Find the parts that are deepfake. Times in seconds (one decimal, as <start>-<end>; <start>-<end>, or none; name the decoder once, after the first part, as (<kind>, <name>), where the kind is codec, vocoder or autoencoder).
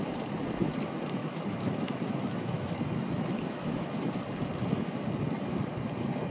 1.2-4.1 (autoencoder, DAC-VAE)